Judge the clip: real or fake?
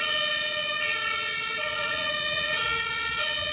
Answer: fake